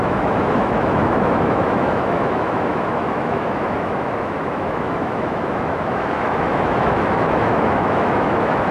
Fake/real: fake